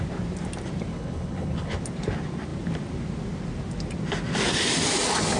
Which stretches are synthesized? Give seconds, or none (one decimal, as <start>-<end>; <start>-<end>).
0.9-1.8